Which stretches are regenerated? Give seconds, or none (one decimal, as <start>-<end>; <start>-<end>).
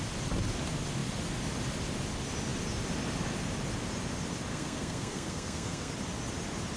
4.5-5.9